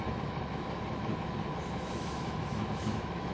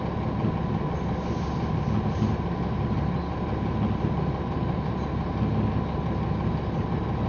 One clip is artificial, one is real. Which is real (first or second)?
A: second